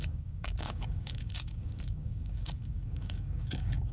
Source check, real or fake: fake